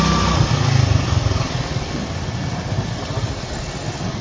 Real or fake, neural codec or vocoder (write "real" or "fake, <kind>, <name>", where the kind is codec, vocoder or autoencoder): real